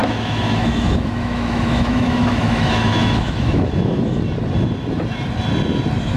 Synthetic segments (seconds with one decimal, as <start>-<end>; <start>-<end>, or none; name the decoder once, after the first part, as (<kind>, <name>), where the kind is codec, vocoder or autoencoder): 0.0-3.7 (autoencoder, DAC-VAE)